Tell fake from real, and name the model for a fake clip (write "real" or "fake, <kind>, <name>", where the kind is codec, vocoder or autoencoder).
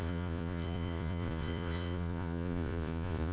fake, vocoder, Vocos